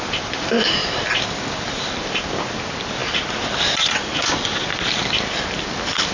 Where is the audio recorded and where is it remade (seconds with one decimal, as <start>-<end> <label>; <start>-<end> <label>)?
0.0-6.1 recorded